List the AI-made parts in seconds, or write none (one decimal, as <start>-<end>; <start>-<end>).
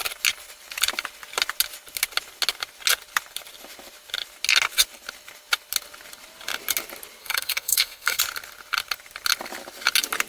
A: 7.2-8.2